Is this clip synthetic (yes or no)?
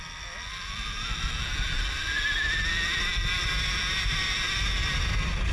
no